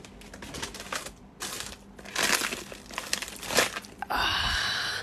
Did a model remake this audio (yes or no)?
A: no